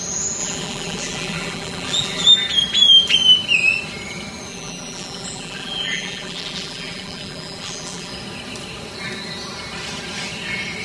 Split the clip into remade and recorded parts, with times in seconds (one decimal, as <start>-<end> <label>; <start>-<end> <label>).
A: 0.0-0.4 recorded; 0.4-2.3 remade; 2.3-4.5 recorded; 4.5-8.1 remade; 8.1-10.8 recorded